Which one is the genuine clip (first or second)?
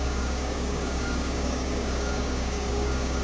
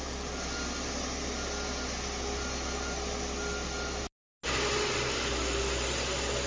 second